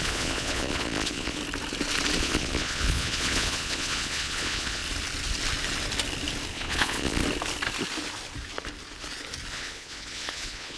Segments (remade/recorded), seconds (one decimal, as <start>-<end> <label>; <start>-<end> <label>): 0.0-1.4 remade; 1.4-2.2 recorded; 2.2-4.8 remade; 4.8-6.5 recorded; 6.5-7.2 remade; 7.2-9.5 recorded; 9.5-10.8 remade